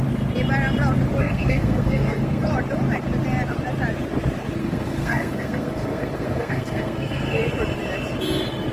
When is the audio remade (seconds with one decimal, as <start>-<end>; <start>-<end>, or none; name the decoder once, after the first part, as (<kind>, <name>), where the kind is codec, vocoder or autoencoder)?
1.2-2.5 (codec, SNAC); 4.6-7.5